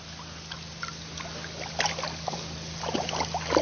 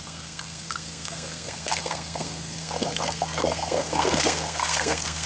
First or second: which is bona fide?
first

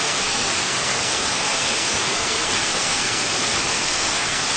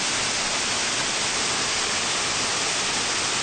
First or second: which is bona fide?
second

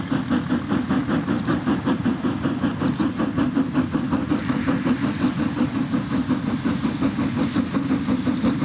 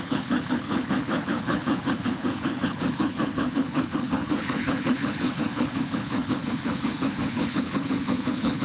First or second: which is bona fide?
first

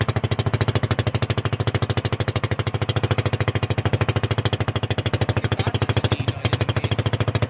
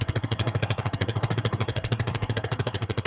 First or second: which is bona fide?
first